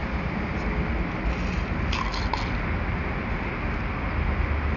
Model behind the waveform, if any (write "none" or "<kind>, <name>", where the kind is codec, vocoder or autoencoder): none